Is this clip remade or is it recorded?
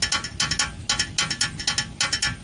recorded